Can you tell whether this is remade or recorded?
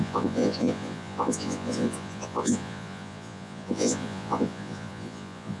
remade